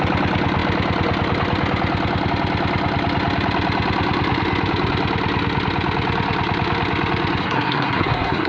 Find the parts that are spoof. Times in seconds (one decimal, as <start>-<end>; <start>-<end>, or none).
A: 7.4-8.5